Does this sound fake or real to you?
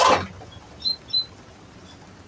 real